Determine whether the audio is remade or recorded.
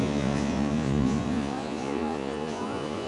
remade